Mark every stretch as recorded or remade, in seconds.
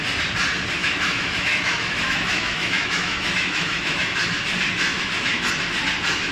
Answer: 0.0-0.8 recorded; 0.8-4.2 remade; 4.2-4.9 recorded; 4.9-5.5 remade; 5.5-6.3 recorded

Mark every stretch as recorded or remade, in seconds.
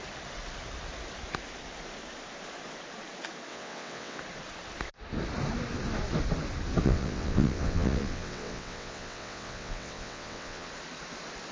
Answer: 0.0-3.5 recorded; 3.5-4.2 remade; 4.2-6.8 recorded; 6.8-10.7 remade; 10.7-11.5 recorded